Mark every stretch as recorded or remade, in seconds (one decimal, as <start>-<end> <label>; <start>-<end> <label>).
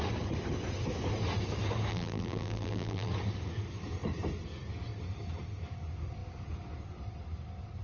0.0-1.9 recorded; 1.9-3.1 remade; 3.1-7.8 recorded